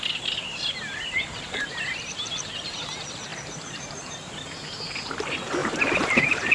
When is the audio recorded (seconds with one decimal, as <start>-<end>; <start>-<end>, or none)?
0.0-3.3; 4.1-5.6